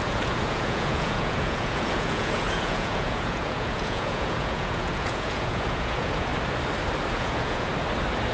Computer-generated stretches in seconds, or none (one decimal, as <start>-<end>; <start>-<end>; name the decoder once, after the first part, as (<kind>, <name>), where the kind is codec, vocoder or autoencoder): 0.0-6.3 (vocoder, Vocos); 7.1-7.7